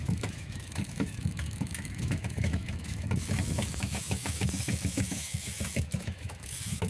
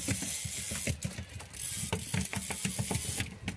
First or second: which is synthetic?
first